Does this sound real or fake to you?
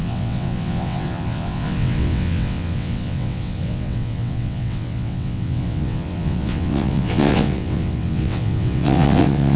fake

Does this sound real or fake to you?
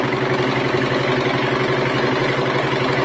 real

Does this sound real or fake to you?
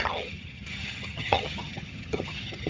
fake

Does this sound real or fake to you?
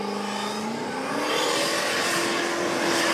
real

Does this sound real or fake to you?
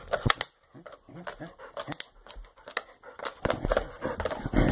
real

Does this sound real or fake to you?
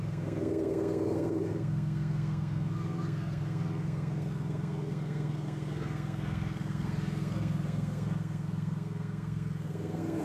fake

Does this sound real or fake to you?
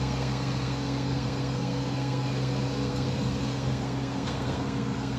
fake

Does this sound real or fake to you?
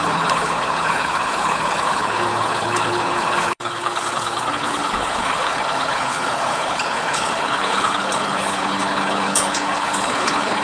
fake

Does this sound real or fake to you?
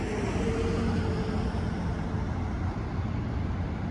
real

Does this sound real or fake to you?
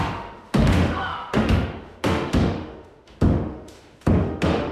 fake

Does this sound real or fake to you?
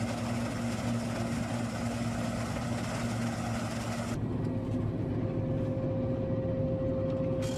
real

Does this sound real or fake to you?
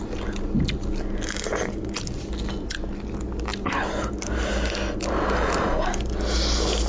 real